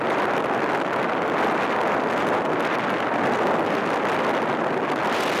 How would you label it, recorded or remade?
recorded